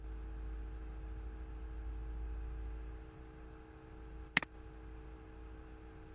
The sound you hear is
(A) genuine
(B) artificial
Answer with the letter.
A